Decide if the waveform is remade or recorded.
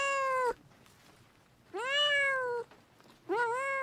recorded